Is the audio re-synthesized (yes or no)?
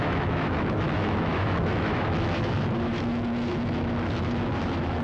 yes